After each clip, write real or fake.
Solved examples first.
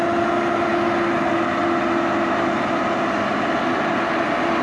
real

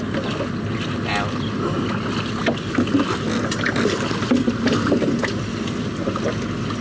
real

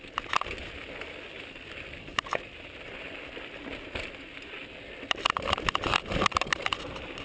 real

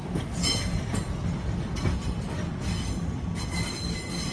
real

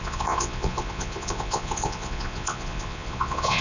fake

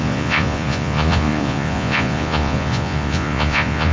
fake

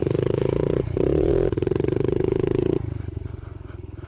fake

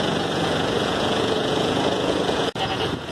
fake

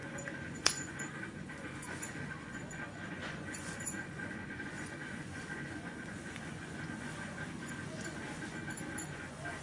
fake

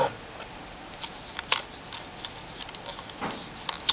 real